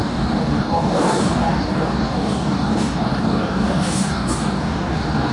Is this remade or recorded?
remade